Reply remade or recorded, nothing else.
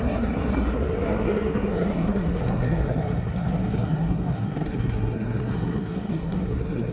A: remade